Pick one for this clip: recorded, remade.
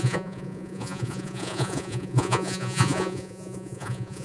remade